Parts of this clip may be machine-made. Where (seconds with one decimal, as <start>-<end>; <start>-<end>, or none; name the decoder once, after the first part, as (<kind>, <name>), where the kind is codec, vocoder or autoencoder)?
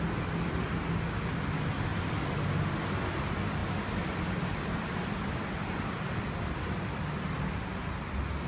none